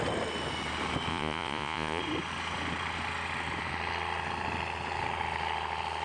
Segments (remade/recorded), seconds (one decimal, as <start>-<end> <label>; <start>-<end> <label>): 0.0-1.1 recorded; 1.1-2.0 remade; 2.0-6.0 recorded